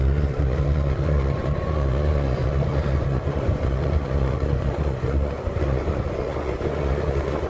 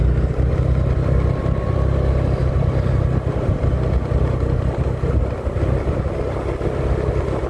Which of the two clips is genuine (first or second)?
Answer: second